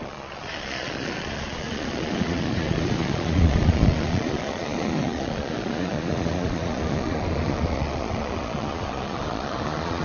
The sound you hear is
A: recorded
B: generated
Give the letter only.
B